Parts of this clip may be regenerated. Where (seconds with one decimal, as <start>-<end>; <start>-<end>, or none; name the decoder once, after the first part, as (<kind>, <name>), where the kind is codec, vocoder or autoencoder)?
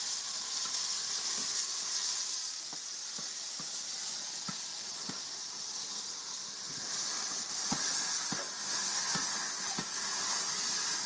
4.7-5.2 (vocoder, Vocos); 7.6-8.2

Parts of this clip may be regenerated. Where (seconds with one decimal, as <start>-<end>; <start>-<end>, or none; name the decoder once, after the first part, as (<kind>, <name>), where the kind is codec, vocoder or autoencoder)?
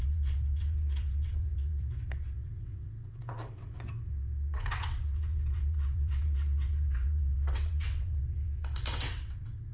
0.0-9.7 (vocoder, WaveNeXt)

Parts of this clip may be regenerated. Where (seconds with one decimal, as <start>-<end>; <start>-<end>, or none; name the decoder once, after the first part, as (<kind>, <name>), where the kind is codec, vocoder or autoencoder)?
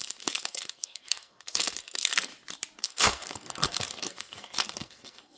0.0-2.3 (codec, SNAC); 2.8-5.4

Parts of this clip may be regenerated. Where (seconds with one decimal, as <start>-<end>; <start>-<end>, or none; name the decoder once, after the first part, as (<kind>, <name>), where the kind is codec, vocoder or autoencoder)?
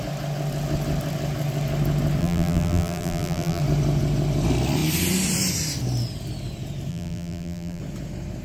2.2-3.6 (vocoder, BigVGAN v2); 6.9-7.8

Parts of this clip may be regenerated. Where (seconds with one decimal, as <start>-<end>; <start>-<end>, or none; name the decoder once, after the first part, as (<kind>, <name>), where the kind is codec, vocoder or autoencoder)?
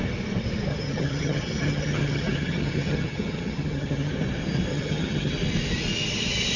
0.7-4.1 (vocoder, HiFi-GAN); 4.7-5.3